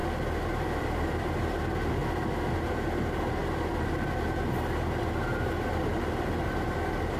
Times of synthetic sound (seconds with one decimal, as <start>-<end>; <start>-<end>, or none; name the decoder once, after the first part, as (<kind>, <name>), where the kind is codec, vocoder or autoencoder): 0.0-1.3 (vocoder, BigVGAN v2); 2.0-2.7